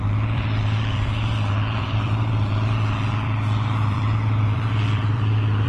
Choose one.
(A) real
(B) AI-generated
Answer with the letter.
B